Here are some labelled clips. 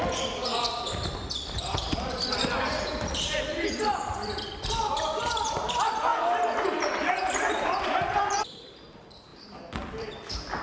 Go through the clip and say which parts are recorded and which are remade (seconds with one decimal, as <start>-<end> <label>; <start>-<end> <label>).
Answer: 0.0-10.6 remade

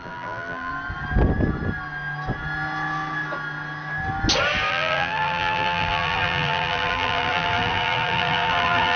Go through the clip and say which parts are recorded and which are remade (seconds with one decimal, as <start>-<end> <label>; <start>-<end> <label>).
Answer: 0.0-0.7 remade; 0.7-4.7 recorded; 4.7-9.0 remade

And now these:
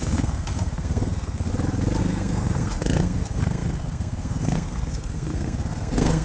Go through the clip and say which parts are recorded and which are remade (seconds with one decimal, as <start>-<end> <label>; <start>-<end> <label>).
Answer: 0.0-1.5 remade; 1.5-2.0 recorded; 2.0-6.2 remade